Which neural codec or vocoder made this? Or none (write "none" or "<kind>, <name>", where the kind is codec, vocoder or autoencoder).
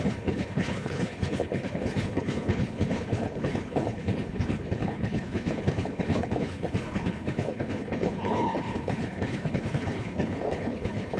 codec, HILCodec